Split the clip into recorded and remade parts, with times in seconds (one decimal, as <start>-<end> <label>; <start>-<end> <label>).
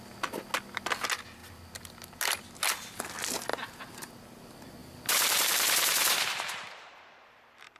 0.0-3.5 recorded; 3.5-4.1 remade; 4.1-4.8 recorded; 4.8-7.8 remade